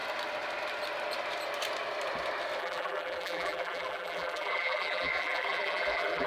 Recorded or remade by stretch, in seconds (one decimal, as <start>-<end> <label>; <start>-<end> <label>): 0.0-2.6 recorded; 2.6-6.3 remade